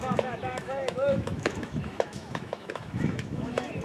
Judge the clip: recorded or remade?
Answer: remade